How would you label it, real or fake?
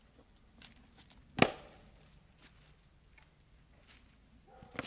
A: real